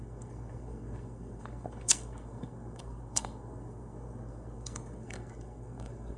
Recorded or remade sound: remade